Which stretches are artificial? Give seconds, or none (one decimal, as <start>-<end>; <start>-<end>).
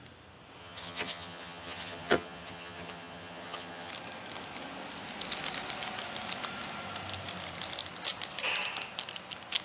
0.6-3.9